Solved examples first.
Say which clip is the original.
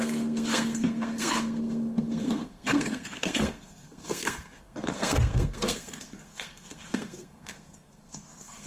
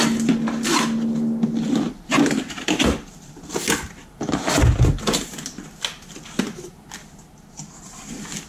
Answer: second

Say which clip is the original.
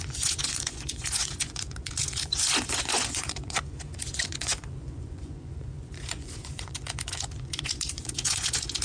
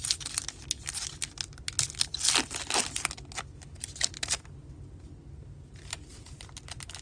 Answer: second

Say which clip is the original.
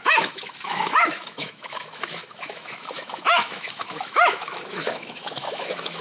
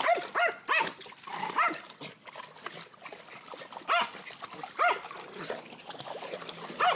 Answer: second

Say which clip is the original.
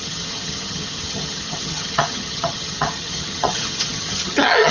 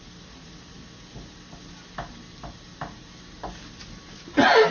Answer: second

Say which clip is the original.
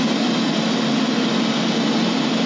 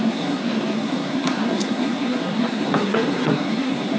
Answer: first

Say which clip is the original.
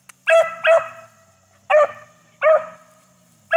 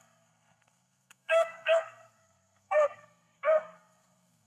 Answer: first